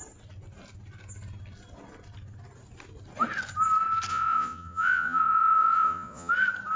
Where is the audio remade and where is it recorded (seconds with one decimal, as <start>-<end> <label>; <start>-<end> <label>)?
0.0-4.1 recorded; 4.1-6.3 remade; 6.3-6.8 recorded